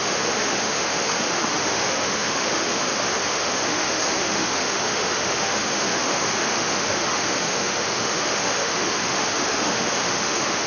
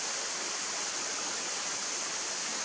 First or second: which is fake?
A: first